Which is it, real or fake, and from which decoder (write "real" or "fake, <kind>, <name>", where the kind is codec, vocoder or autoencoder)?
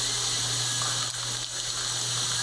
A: real